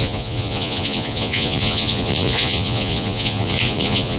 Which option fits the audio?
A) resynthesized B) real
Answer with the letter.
A